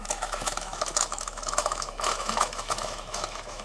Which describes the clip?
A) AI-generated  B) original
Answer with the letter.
A